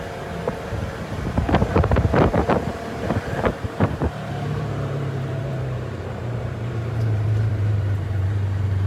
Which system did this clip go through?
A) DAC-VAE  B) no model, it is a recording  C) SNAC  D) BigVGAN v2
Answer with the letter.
D